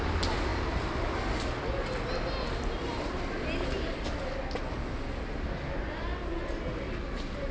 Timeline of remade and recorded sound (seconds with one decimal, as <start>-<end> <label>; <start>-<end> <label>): 0.0-7.5 recorded